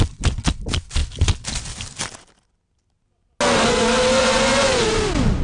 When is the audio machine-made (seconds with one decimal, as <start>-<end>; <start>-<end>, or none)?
4.2-4.8